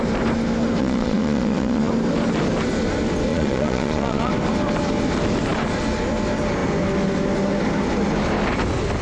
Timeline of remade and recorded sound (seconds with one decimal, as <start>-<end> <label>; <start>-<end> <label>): 0.0-0.8 recorded; 0.8-1.9 remade; 1.9-3.3 recorded; 3.3-4.3 remade; 4.3-9.0 recorded